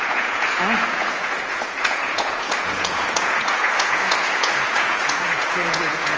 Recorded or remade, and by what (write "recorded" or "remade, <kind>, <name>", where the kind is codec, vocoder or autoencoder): remade, vocoder, Vocos